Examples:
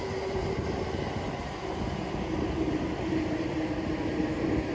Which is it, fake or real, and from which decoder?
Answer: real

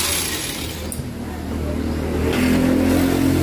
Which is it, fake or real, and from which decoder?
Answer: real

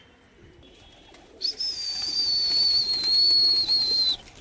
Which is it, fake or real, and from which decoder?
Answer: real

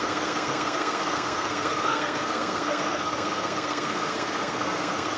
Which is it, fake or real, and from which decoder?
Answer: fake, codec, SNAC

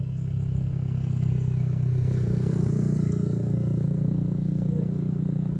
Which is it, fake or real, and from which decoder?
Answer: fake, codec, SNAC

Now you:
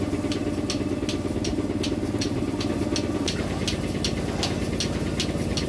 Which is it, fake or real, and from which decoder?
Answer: real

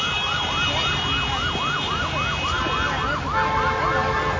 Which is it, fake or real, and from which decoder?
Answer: real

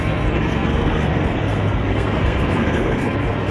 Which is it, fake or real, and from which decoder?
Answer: fake, codec, SNAC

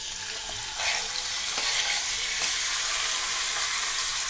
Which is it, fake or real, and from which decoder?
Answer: real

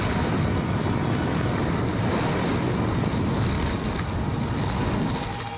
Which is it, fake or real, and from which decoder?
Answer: real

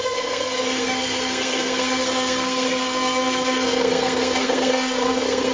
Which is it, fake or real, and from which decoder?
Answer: fake, codec, SNAC